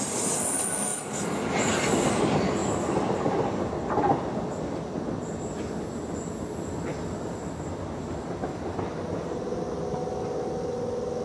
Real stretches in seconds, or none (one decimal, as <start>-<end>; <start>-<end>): 0.0-11.2